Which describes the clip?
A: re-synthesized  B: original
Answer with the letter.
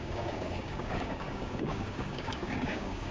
A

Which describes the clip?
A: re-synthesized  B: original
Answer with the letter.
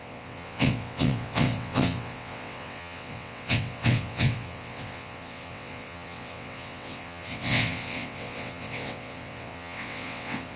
A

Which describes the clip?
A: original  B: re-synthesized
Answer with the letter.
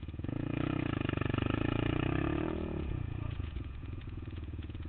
B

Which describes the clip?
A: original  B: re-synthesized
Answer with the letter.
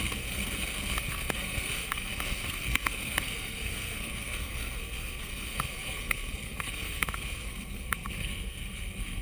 B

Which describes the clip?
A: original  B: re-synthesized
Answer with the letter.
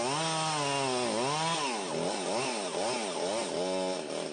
A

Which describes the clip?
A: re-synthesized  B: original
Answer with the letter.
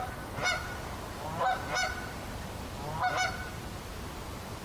A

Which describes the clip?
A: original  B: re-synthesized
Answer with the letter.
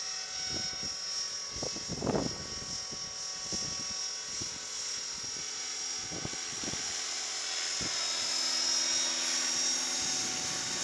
A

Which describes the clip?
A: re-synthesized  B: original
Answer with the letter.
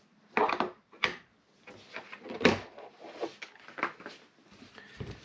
B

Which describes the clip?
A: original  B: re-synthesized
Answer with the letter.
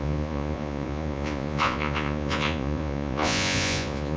B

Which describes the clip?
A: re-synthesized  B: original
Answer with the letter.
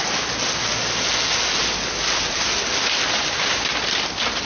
B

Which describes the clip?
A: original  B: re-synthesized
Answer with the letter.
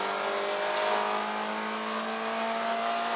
A